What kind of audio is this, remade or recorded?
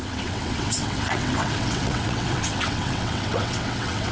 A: remade